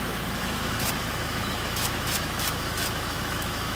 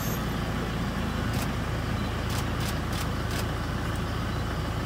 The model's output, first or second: first